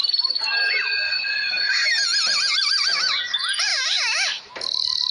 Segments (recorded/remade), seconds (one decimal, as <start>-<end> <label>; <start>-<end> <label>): 0.0-3.7 recorded; 3.7-4.4 remade; 4.4-5.1 recorded